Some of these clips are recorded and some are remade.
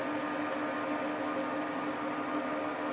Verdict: recorded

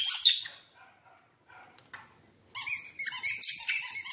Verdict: recorded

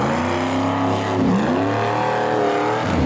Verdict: recorded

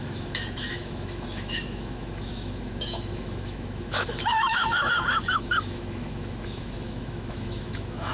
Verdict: remade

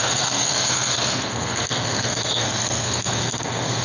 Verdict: remade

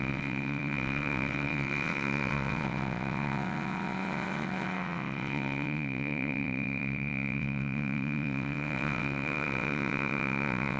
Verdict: remade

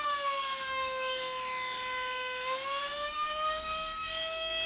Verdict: remade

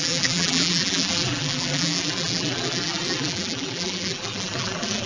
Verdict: remade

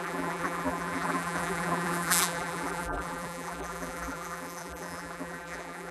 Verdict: remade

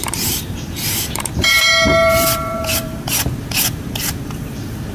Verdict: remade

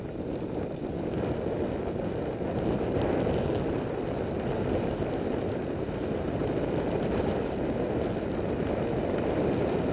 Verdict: recorded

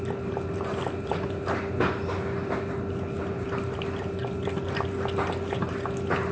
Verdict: recorded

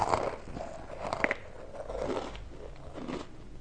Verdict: recorded